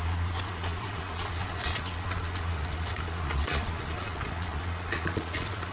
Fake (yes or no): yes